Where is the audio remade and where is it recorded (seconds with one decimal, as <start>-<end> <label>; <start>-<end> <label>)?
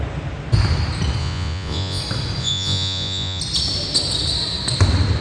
0.0-1.2 recorded; 1.2-2.0 remade; 2.0-2.4 recorded; 2.4-3.4 remade; 3.4-5.2 recorded